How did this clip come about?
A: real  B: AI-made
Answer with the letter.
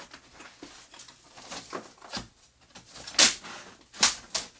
A